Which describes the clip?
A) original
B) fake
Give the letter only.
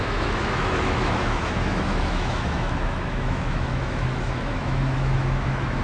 B